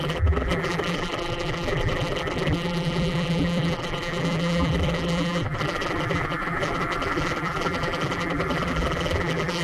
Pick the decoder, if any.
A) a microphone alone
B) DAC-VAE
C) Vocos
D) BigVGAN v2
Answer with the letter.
D